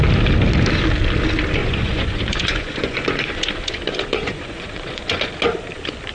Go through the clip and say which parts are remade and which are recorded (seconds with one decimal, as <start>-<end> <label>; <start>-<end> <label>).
0.0-1.6 recorded; 1.6-5.3 remade; 5.3-6.1 recorded